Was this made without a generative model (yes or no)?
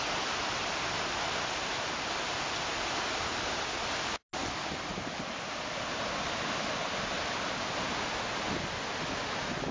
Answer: yes